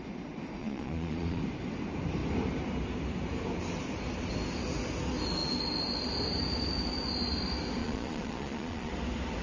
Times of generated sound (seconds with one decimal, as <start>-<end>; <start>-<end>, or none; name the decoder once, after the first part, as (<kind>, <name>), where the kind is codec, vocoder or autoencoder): 0.6-1.4 (vocoder, Vocos); 7.8-8.9